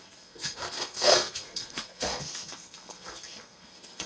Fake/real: fake